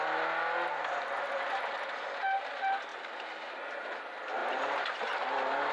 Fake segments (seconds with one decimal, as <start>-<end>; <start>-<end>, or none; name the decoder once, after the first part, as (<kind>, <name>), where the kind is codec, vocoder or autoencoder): none